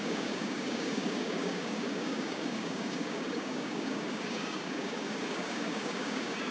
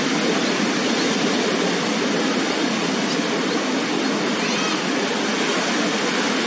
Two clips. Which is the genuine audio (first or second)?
second